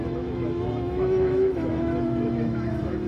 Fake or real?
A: fake